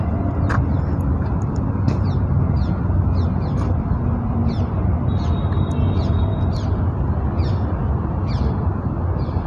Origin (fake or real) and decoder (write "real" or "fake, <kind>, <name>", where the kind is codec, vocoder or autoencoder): real